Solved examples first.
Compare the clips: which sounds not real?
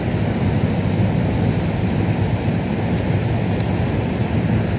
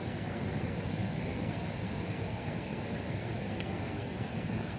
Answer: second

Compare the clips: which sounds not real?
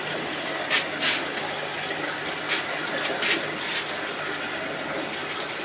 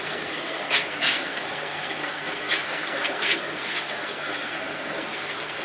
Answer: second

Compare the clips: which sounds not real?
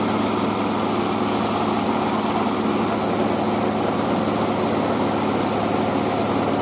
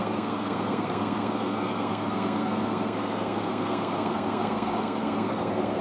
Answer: second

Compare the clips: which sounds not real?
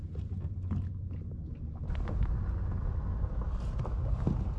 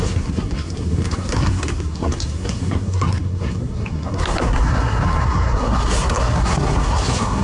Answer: second